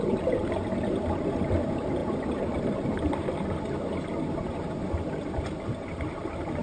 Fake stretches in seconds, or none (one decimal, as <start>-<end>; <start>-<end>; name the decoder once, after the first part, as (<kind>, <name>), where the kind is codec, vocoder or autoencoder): none